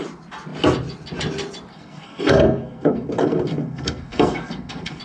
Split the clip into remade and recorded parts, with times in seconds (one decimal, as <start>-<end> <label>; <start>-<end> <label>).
0.0-1.7 recorded; 1.7-5.0 remade